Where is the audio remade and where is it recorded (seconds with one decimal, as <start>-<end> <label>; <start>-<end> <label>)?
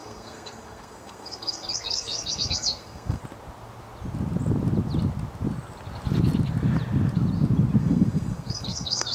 0.0-3.2 remade; 3.2-7.8 recorded; 7.8-9.1 remade